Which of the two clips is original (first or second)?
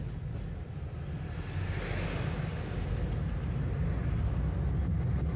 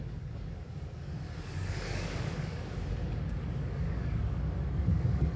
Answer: first